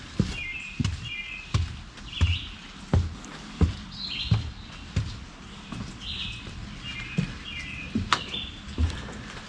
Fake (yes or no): no